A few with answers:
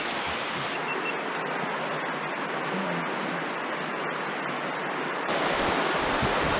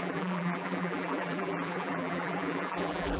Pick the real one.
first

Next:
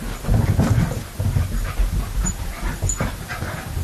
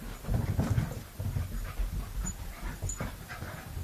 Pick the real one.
first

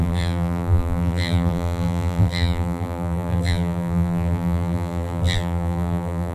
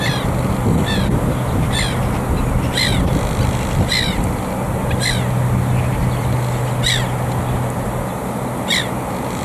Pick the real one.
second